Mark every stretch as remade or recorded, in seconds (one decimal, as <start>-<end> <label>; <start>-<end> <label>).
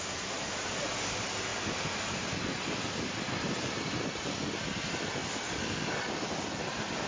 0.0-7.1 recorded